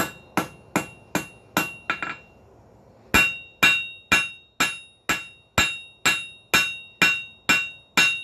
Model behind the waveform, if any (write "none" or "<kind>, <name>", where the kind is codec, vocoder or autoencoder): none